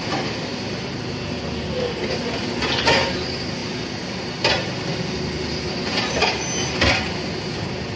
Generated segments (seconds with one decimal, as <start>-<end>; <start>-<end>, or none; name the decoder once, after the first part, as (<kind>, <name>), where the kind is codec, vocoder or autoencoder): none